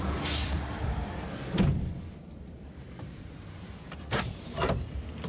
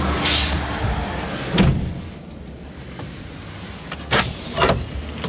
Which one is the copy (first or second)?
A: first